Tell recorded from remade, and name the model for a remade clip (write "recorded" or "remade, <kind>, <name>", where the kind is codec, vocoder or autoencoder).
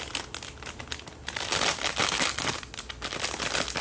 recorded